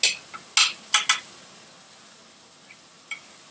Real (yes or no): yes